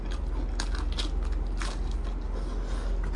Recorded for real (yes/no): yes